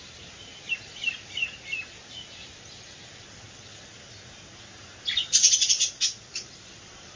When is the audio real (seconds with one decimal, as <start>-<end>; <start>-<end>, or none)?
0.0-6.3